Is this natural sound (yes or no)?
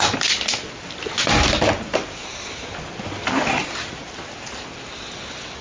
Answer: yes